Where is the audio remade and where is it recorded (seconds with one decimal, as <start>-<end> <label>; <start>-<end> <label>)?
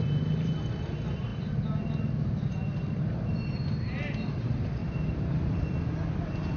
0.0-4.8 recorded; 4.8-5.8 remade; 5.8-6.6 recorded